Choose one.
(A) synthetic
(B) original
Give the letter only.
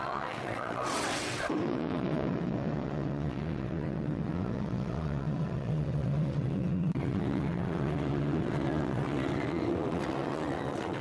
A